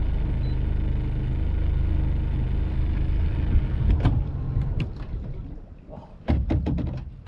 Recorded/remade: recorded